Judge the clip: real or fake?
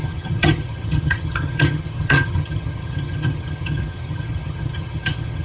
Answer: fake